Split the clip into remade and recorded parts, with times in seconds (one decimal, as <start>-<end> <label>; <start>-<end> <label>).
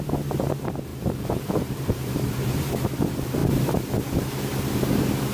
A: 0.0-0.9 recorded; 0.9-2.7 remade; 2.7-5.3 recorded